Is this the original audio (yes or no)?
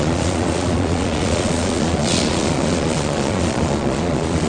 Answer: no